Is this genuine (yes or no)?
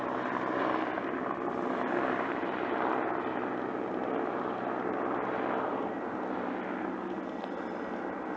yes